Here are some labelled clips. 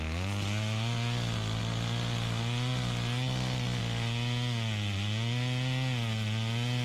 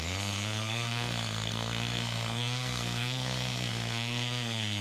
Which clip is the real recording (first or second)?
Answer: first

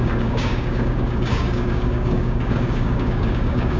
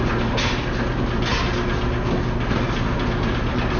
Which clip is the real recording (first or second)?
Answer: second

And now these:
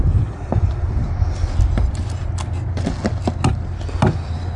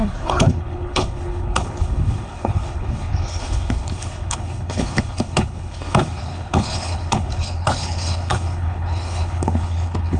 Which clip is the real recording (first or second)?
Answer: first